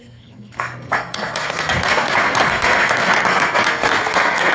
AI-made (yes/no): yes